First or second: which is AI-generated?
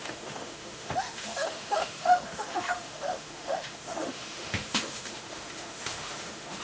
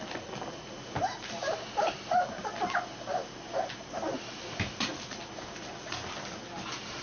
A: first